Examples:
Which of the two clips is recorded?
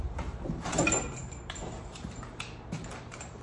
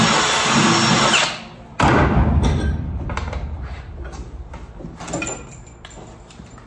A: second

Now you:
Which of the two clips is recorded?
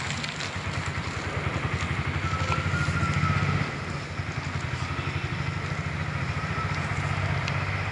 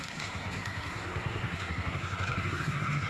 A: first